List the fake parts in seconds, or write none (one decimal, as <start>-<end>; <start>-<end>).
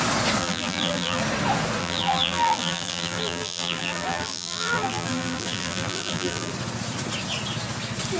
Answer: 0.4-1.2; 1.8-6.5